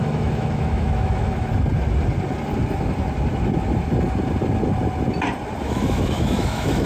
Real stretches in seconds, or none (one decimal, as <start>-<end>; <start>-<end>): 1.5-5.6